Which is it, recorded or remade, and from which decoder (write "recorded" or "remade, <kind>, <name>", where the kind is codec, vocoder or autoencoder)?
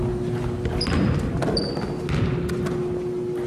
recorded